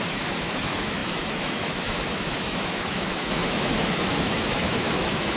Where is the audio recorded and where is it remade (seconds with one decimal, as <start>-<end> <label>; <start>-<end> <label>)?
0.0-5.4 remade